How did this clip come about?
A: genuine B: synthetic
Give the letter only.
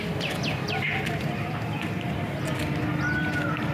B